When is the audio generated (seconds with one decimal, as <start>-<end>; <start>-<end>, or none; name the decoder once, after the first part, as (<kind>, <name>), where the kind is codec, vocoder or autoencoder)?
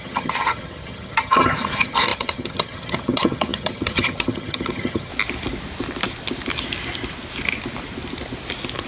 0.0-5.1 (vocoder, HiFi-GAN)